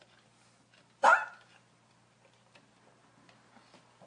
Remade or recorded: recorded